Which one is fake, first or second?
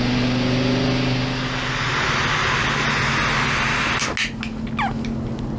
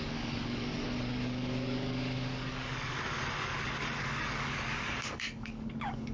second